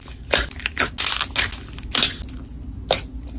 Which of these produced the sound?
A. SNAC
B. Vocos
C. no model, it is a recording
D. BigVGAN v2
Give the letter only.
C